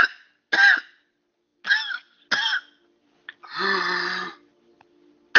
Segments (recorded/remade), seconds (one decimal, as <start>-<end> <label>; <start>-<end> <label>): 0.0-5.4 recorded